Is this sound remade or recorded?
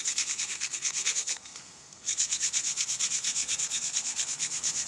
remade